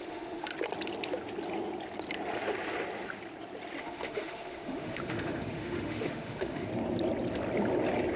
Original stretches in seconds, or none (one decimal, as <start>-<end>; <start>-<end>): 0.5-3.8; 6.7-8.2